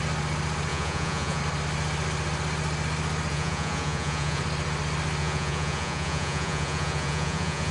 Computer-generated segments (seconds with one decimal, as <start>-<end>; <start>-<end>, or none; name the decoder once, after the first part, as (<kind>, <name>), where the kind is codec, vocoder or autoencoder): 0.7-1.4 (vocoder, Vocos); 3.3-4.4; 5.2-7.7